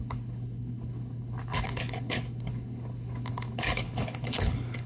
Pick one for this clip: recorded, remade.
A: remade